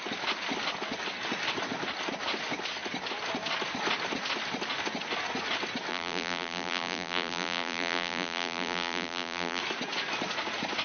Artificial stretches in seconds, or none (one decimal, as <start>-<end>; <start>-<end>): 5.9-9.6